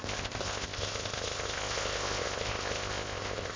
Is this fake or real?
fake